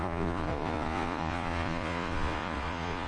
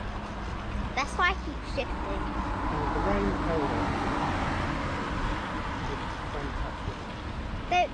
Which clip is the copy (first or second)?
first